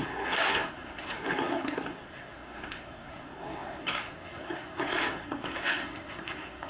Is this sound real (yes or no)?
no